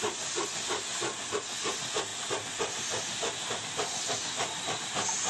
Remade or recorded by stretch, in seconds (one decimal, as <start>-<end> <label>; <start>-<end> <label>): 0.0-5.3 recorded